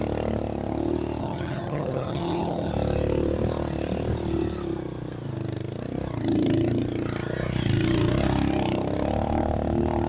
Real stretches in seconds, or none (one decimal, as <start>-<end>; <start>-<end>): 0.0-1.2; 2.7-10.1